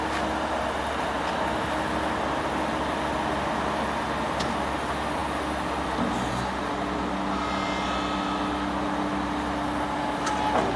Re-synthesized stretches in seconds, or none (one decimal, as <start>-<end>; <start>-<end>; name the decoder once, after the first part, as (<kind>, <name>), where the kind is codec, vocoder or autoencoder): none